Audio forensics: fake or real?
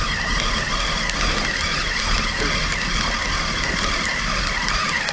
real